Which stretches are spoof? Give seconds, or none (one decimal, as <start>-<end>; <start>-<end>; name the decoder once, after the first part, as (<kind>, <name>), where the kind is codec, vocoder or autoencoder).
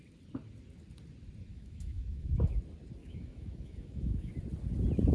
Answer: 1.5-2.6 (autoencoder, DAC-VAE); 3.0-4.3